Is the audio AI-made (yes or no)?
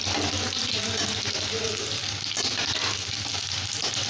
no